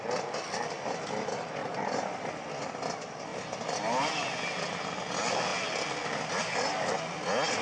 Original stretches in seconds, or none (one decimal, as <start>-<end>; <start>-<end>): 0.0-1.6; 2.3-7.6